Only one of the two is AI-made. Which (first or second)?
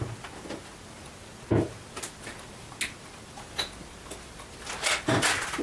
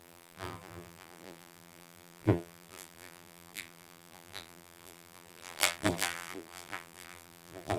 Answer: second